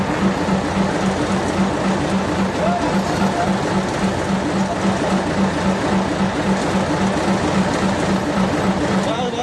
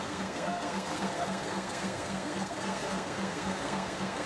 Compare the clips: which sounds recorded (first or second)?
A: first